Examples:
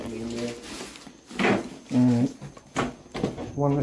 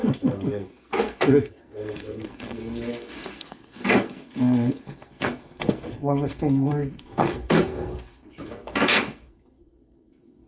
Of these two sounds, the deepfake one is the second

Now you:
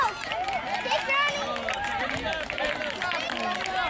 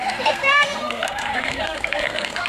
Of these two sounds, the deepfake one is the second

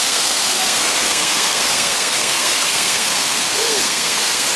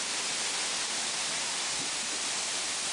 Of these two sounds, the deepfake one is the first